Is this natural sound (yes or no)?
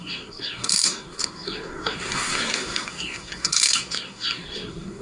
no